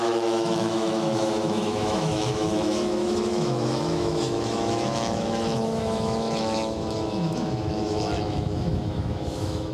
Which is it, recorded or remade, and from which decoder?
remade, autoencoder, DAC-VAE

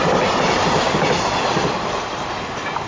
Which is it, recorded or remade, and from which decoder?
recorded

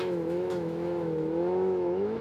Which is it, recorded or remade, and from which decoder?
remade, autoencoder, DAC-VAE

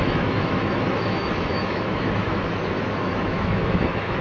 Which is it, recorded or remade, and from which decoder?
remade, autoencoder, DAC-VAE